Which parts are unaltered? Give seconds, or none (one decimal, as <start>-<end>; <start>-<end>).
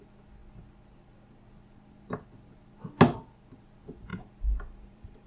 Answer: 0.0-4.1